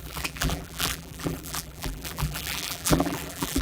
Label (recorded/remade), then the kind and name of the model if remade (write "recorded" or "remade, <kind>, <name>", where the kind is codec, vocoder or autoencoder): remade, vocoder, BigVGAN v2